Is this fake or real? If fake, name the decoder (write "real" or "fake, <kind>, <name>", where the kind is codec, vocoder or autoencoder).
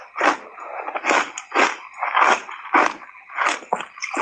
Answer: real